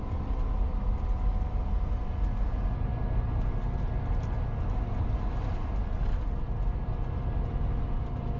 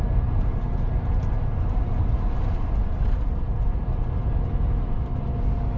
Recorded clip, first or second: first